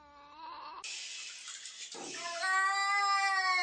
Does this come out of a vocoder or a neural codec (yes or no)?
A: no